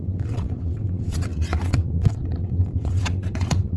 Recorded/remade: remade